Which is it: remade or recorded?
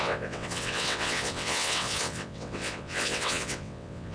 remade